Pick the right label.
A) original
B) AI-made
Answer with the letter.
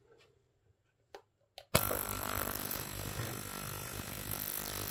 A